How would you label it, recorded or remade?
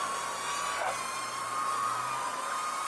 remade